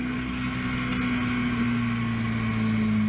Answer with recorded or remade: recorded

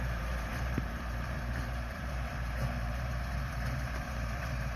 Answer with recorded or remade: remade